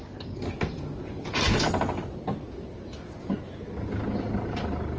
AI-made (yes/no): no